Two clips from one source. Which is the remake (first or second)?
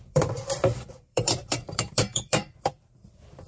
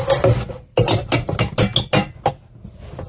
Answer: first